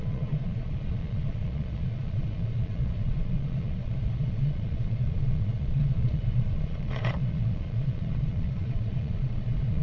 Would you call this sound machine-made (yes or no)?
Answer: yes